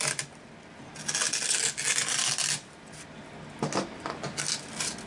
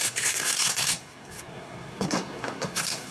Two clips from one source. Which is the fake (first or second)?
second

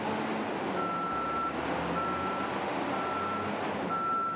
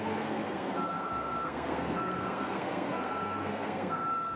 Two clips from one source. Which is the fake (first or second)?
second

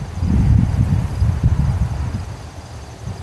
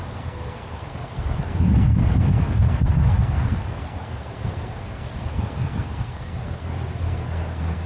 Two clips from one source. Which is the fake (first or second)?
second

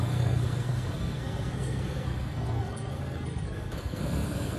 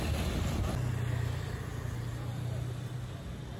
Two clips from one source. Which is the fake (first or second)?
first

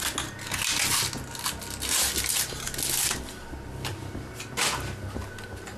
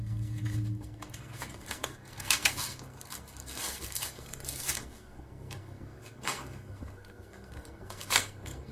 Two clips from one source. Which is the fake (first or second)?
second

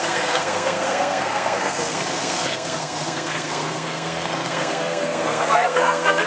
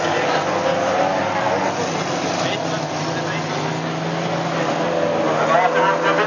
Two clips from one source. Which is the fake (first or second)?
first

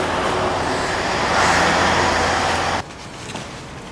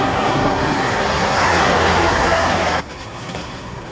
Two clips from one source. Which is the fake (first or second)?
second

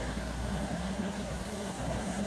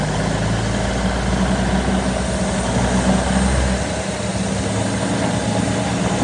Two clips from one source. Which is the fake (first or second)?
first